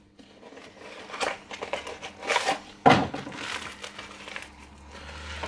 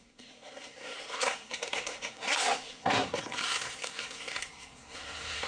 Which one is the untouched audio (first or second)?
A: first